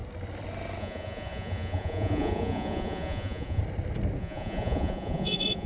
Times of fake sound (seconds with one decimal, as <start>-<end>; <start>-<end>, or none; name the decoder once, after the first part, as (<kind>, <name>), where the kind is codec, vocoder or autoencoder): 0.8-3.6 (vocoder, Vocos); 4.2-5.7